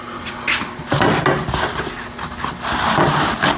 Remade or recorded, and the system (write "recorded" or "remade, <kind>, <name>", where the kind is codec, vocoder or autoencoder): recorded